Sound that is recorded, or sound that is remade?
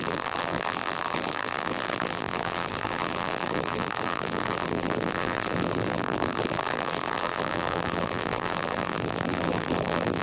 remade